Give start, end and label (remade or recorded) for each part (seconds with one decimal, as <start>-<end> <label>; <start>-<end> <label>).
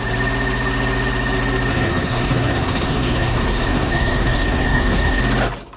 0.0-1.7 recorded; 1.7-5.2 remade; 5.2-5.8 recorded